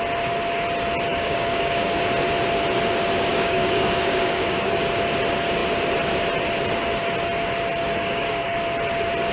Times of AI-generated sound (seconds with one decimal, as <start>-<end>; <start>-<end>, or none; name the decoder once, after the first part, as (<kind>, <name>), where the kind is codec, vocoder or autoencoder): 1.1-2.0 (codec, DAC); 3.3-4.8; 7.8-8.6